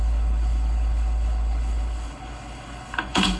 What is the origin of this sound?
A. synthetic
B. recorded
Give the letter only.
A